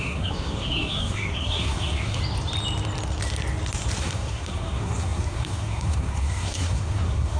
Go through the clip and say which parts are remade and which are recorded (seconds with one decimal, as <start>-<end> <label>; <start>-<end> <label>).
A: 0.0-2.2 remade; 2.2-4.0 recorded; 4.0-7.4 remade